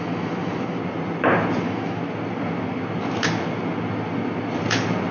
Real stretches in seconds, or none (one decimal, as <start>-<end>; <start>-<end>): 0.8-1.6; 2.0-5.1